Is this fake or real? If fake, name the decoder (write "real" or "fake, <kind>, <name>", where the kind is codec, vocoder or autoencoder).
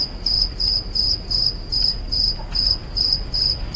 real